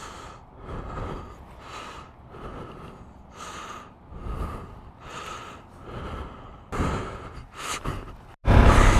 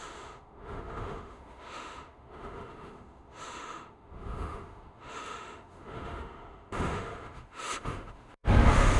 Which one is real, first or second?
first